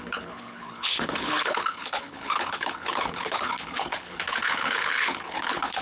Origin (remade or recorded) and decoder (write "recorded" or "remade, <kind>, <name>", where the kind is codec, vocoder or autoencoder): remade, codec, HILCodec